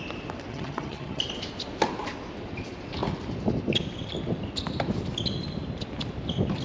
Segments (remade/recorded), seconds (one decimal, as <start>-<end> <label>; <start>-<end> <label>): 0.0-0.5 recorded; 0.5-1.2 remade; 1.2-6.6 recorded